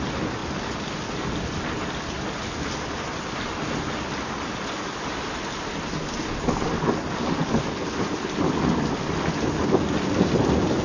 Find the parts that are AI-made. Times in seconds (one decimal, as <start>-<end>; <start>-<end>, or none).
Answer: none